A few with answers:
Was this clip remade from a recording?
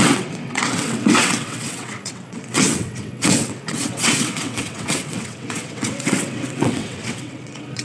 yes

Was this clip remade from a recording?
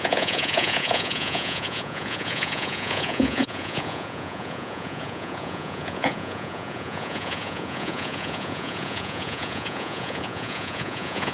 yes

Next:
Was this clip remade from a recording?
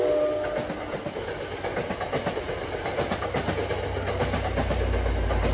no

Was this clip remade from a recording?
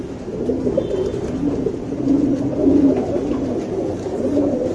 no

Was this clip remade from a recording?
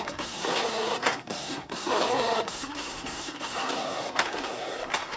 yes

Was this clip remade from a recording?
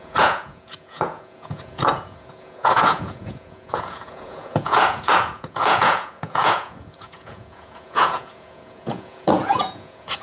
yes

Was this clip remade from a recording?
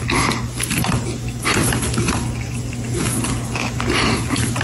no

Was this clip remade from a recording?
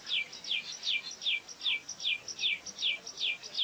no